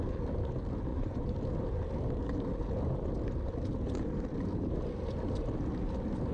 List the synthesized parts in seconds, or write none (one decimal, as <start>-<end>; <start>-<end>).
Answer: 0.9-1.4

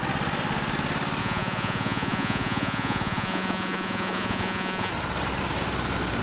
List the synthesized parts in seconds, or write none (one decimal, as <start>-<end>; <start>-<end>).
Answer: 1.2-4.9

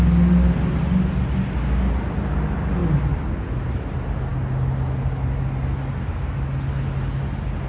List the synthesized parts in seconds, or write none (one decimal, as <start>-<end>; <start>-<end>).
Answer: none

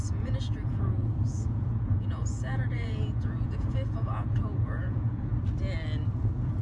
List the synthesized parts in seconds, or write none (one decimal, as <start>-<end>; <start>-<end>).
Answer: 0.0-5.3; 6.1-6.6

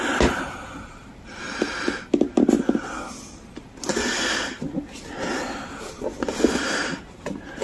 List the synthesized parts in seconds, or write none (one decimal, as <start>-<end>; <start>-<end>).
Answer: none

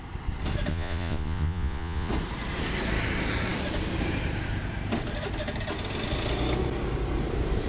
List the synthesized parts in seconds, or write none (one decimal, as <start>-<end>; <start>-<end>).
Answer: 0.7-2.1

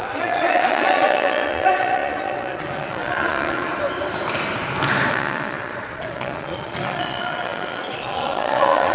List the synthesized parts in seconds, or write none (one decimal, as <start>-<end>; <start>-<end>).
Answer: 0.0-3.7; 5.1-8.9

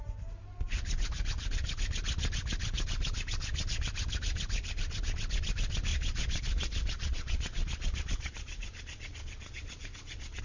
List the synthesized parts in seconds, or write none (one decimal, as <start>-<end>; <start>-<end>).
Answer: 5.9-10.4